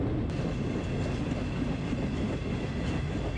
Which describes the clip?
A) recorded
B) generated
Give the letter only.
A